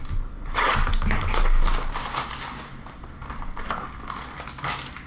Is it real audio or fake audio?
real